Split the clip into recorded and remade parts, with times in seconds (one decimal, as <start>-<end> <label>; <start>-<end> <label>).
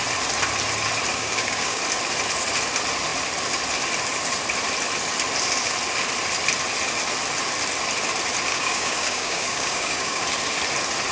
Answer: 0.0-1.1 recorded; 1.1-1.8 remade; 1.8-8.5 recorded; 8.5-10.2 remade; 10.2-11.1 recorded